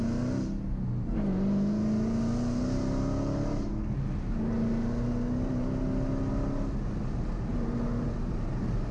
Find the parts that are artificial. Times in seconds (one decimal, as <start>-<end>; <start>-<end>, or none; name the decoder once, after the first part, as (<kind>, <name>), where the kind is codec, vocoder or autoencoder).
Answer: none